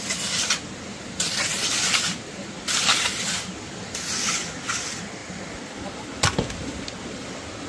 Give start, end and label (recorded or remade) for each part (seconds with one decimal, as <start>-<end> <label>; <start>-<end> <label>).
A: 0.0-7.7 recorded